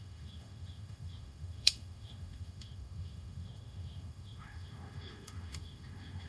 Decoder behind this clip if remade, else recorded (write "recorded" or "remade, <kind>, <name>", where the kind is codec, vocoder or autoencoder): remade, autoencoder, DAC-VAE